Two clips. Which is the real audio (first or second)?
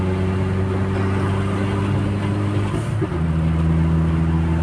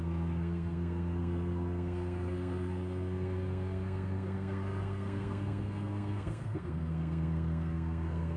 first